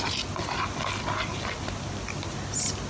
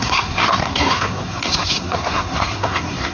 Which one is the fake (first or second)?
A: second